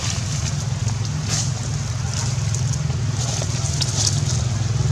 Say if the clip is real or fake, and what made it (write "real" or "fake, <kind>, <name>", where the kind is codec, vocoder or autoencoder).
real